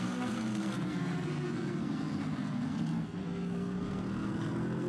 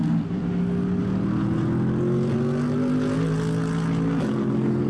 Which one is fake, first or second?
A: first